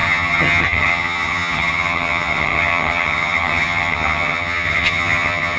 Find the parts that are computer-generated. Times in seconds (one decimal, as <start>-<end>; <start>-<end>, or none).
0.0-5.6